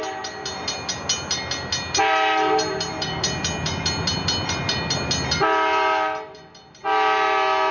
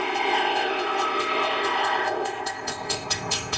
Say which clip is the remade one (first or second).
second